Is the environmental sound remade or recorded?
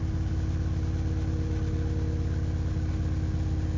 recorded